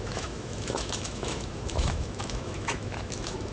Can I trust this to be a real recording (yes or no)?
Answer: no